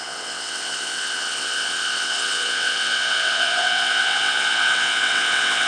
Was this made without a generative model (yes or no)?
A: no